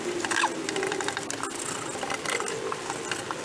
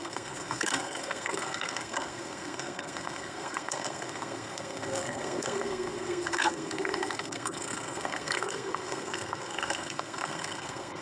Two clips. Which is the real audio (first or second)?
first